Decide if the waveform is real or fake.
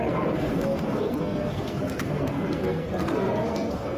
fake